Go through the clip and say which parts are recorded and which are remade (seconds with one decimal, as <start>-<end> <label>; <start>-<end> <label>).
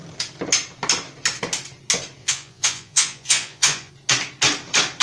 0.0-2.2 recorded; 2.2-3.9 remade; 3.9-5.0 recorded